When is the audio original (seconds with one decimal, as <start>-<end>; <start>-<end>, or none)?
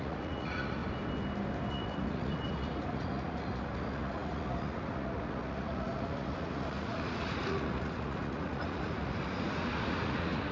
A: 0.8-1.7